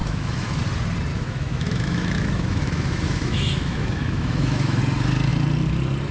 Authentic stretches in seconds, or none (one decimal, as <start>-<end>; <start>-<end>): 0.6-1.1; 4.8-6.1